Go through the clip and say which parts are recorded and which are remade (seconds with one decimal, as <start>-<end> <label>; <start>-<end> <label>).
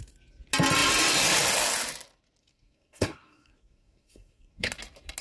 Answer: 0.0-2.4 recorded; 2.4-4.7 remade; 4.7-5.2 recorded